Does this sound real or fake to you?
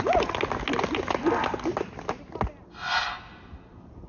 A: real